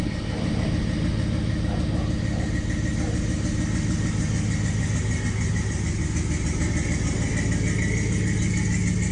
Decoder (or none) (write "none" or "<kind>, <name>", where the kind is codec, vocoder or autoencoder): none